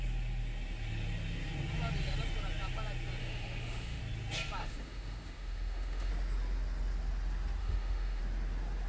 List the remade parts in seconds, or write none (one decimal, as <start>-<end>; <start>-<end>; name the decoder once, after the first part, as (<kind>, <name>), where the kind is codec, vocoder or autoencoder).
3.2-4.0 (autoencoder, DAC-VAE); 4.6-6.1; 7.6-8.2